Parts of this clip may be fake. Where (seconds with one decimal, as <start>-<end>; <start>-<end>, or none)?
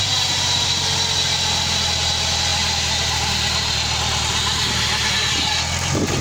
none